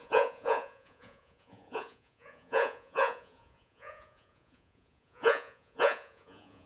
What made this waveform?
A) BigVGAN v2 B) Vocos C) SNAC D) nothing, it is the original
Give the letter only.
B